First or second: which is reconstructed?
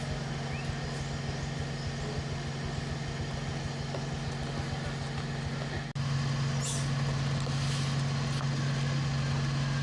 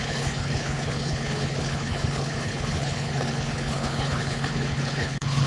second